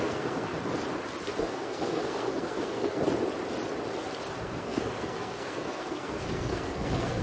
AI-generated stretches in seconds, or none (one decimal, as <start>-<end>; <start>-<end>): 0.0-0.5; 1.4-3.0; 4.4-7.2